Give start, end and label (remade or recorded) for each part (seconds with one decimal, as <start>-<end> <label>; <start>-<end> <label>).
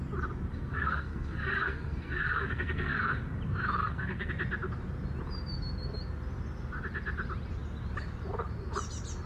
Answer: 0.0-0.5 recorded; 0.5-3.0 remade; 3.0-3.8 recorded; 3.8-4.3 remade; 4.3-9.3 recorded